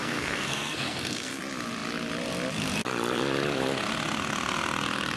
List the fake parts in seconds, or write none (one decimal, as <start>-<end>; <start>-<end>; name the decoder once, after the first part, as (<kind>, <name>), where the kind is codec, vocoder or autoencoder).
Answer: 0.0-1.4 (codec, SNAC)